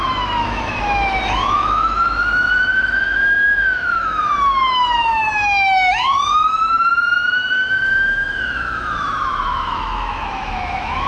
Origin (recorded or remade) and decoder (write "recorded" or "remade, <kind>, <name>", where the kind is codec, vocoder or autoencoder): remade, autoencoder, DAC-VAE